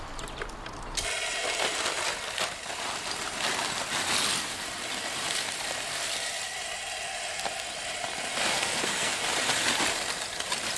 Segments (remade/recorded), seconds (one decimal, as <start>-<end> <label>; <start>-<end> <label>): 0.0-8.5 recorded; 8.5-9.2 remade; 9.2-10.8 recorded